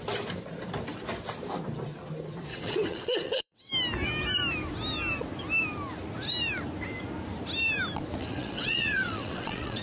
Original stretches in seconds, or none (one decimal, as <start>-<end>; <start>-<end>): 0.0-2.5; 3.7-8.2